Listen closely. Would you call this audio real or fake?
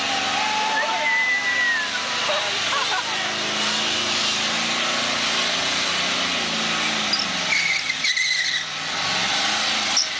real